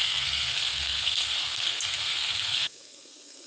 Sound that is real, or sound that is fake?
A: fake